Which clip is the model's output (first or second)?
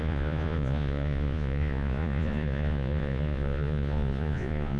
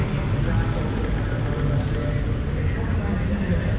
first